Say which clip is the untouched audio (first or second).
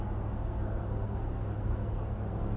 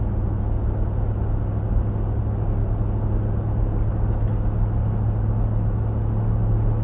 second